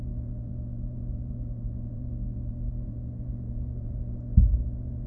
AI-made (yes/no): yes